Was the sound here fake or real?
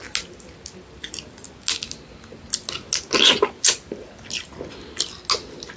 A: real